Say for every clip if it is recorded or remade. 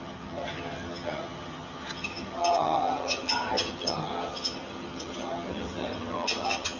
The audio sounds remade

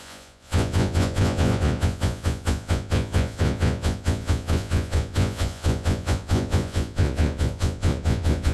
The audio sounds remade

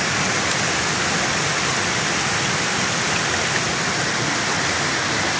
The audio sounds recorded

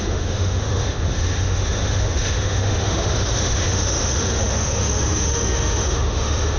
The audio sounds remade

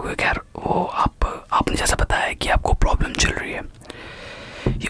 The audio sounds recorded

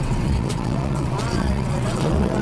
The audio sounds remade